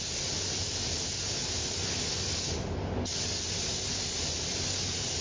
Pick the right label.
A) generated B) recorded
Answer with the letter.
B